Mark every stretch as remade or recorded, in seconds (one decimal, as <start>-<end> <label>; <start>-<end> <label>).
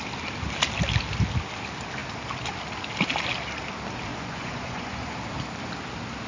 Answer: 0.0-4.1 recorded; 4.1-5.1 remade; 5.1-6.3 recorded